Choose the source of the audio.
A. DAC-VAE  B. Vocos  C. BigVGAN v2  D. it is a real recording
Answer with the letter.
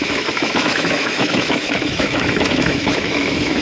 A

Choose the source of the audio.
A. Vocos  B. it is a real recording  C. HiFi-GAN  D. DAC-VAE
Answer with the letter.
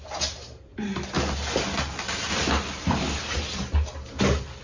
B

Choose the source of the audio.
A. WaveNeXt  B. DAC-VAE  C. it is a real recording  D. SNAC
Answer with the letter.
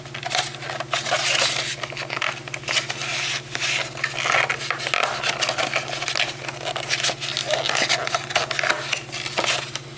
C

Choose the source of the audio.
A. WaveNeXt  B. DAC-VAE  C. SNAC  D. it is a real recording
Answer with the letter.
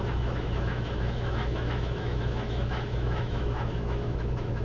B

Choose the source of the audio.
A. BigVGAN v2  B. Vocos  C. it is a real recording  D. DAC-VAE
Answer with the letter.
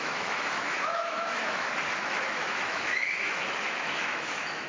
D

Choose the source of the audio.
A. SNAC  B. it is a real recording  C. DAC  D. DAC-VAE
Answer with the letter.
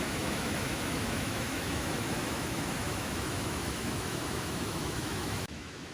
D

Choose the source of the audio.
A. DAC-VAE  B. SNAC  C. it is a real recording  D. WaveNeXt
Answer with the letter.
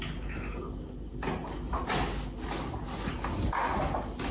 C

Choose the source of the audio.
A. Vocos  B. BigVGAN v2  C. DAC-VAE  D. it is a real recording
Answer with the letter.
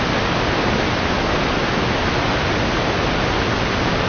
D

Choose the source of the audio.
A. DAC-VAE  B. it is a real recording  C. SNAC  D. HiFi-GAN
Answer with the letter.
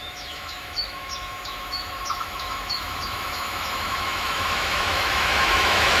A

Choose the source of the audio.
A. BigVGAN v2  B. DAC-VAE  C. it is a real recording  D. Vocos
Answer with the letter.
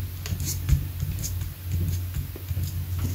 C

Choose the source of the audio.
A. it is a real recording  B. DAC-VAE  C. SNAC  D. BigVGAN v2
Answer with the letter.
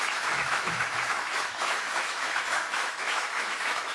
B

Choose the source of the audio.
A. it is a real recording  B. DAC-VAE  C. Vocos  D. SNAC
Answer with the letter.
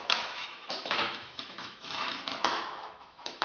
B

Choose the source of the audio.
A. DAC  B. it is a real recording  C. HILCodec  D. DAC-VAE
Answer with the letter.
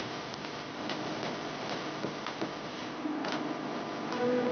B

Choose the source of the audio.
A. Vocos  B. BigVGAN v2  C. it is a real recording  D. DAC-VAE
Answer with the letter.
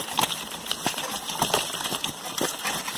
C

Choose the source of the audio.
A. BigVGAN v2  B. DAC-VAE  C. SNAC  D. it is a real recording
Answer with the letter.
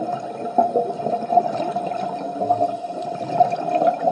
D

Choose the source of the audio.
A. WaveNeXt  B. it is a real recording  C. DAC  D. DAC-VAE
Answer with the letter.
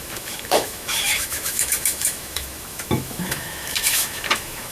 D